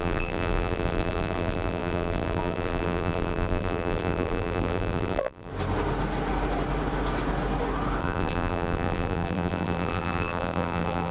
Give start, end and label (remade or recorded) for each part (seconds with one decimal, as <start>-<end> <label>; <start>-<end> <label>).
0.0-5.5 remade; 5.5-8.0 recorded; 8.0-11.1 remade

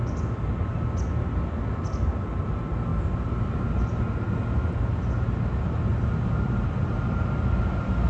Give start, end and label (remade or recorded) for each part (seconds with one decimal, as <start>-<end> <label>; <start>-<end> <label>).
0.0-5.9 recorded; 5.9-7.6 remade; 7.6-8.1 recorded

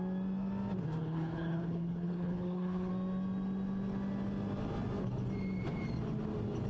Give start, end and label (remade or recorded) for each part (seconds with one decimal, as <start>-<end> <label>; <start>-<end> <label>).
0.0-1.0 recorded; 1.0-2.9 remade; 2.9-6.7 recorded

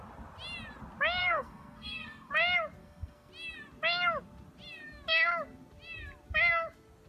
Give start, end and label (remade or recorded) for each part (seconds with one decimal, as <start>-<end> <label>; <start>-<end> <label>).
0.0-1.2 recorded; 1.2-2.3 remade; 2.3-2.8 recorded; 2.8-3.3 remade; 3.3-7.1 recorded

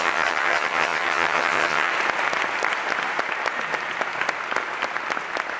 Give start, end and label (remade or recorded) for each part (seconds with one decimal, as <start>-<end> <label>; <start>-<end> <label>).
0.0-1.9 remade; 1.9-5.6 recorded

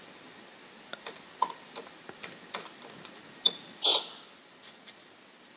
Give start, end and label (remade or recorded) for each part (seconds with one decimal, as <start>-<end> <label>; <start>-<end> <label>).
0.0-5.6 recorded

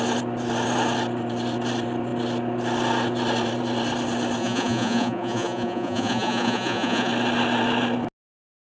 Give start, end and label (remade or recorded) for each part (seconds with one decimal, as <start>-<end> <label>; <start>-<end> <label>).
0.0-4.4 recorded; 4.4-7.1 remade; 7.1-8.7 recorded